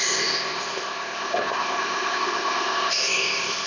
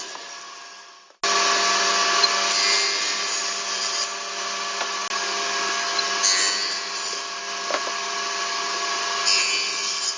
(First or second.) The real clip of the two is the second